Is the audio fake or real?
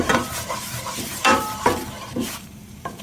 fake